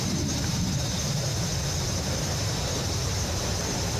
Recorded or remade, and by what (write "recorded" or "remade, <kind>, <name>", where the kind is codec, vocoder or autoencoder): remade, vocoder, BigVGAN v2